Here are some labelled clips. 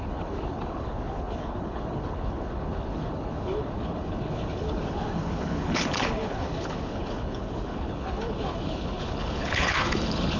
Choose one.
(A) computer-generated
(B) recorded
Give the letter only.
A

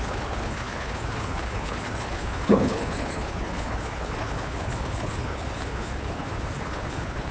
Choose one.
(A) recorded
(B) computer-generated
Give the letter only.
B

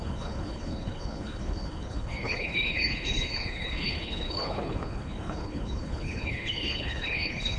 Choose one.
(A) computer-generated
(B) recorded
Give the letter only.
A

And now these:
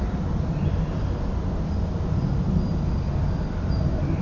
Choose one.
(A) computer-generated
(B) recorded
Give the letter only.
B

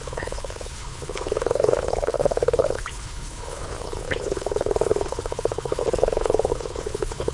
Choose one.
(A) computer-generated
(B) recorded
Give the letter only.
A